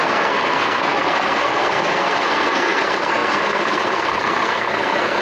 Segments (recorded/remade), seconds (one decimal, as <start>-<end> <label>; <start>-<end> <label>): 0.0-5.2 remade